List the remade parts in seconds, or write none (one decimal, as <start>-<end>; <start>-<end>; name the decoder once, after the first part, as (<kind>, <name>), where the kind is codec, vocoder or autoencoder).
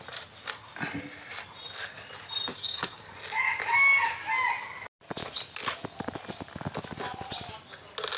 2.5-3.1 (codec, DAC)